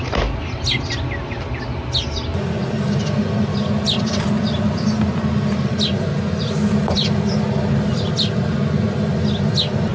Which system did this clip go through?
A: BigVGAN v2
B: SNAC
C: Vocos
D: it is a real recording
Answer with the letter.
D